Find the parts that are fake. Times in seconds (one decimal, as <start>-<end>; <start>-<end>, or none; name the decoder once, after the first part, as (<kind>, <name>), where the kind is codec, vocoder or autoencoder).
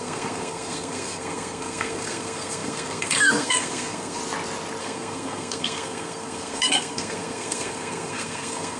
0.0-4.2 (codec, SNAC); 4.8-8.8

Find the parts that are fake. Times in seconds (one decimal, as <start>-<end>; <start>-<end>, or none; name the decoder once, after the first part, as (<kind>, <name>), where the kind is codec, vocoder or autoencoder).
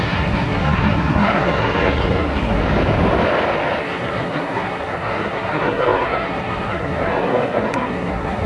0.0-2.6 (codec, SNAC); 3.8-8.5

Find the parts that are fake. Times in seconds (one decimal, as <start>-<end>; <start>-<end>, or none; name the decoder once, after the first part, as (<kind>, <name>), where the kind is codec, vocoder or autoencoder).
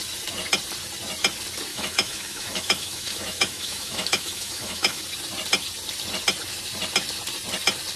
1.7-5.0 (autoencoder, DAC-VAE)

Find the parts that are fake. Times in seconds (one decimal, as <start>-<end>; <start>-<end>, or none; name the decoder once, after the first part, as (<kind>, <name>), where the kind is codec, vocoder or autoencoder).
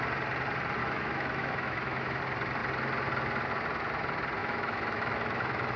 0.8-2.2 (autoencoder, DAC-VAE); 4.4-5.8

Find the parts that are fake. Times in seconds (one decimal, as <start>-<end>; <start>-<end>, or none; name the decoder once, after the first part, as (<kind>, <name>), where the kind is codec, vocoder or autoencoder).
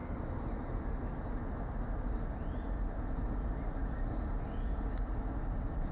none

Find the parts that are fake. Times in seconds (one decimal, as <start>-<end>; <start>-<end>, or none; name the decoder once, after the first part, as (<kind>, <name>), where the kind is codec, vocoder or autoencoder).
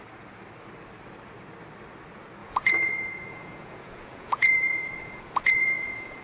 2.4-6.2 (vocoder, Vocos)